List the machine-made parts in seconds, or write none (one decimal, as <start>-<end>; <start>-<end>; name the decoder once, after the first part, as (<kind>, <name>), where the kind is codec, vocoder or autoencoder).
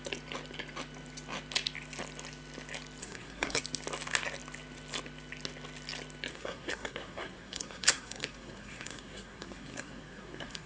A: 3.0-3.6 (codec, SNAC); 6.3-10.7